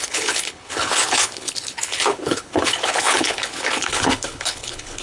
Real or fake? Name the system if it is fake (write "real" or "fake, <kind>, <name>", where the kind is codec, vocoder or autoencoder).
fake, codec, HILCodec